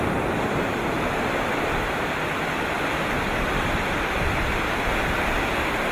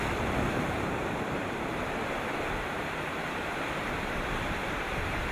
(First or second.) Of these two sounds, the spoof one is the second